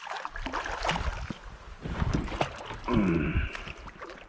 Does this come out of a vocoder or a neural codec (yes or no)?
no